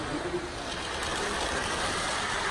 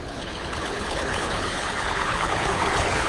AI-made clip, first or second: second